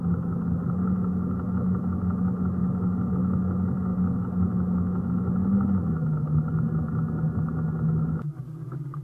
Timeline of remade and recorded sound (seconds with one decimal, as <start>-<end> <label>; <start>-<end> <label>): 0.0-9.0 recorded